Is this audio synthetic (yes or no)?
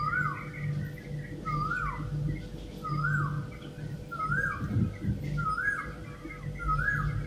no